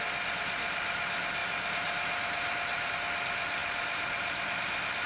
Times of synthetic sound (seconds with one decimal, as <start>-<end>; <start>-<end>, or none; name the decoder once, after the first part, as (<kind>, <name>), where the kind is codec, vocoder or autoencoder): 1.4-2.9 (vocoder, BigVGAN v2); 3.6-4.6